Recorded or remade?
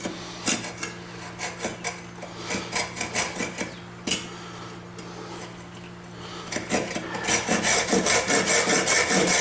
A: recorded